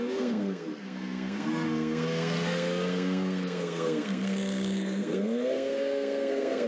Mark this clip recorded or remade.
remade